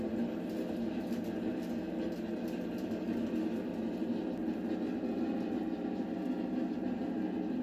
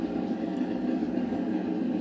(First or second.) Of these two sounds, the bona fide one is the first